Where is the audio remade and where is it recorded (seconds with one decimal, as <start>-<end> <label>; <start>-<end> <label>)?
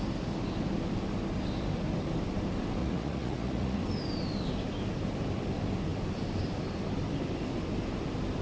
0.0-2.8 recorded; 2.8-3.8 remade; 3.8-8.4 recorded